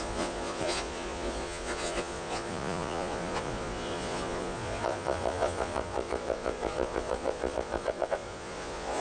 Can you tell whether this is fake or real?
fake